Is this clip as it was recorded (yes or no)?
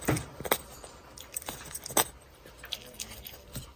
no